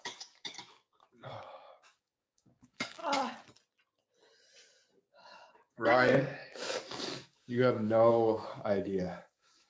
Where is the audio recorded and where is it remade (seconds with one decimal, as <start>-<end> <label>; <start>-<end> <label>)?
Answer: 0.0-3.0 remade; 3.0-5.1 recorded; 5.1-9.7 remade